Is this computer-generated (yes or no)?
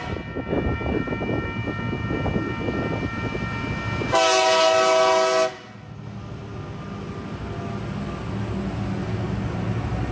no